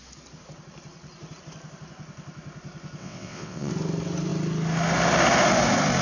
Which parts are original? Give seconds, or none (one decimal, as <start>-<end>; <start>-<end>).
0.0-3.0; 3.7-6.0